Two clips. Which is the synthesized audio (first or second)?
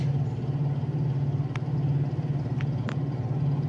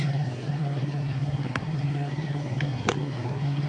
second